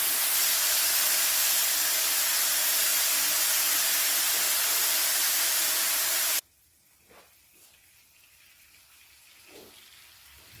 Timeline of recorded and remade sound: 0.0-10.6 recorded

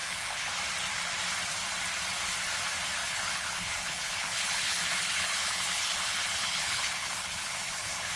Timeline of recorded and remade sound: 0.0-0.5 remade; 0.5-3.0 recorded; 3.0-8.2 remade

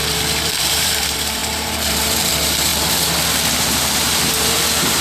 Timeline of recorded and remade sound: 0.0-2.7 remade; 2.7-3.5 recorded; 3.5-5.0 remade

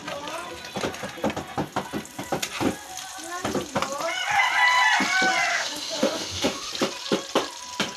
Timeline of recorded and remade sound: 0.0-5.5 recorded; 5.5-6.7 remade; 6.7-8.0 recorded

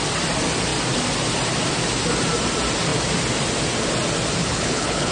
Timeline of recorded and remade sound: 0.0-4.4 recorded; 4.4-5.1 remade

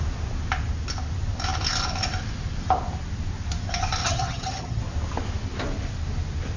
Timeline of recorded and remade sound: 0.0-4.0 recorded; 4.0-4.8 remade; 4.8-6.6 recorded